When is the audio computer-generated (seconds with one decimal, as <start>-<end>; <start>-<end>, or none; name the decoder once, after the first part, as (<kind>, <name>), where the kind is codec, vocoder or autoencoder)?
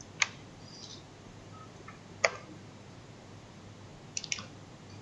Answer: 0.0-3.9 (vocoder, BigVGAN v2); 4.5-5.0